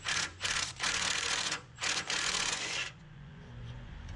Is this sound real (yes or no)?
no